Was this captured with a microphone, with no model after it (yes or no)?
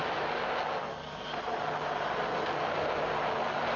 yes